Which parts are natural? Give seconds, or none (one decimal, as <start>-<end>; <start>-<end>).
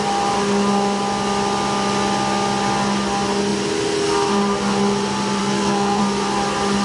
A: 0.0-5.4; 6.0-6.8